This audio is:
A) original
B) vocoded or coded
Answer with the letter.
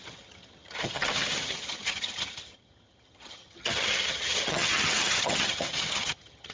B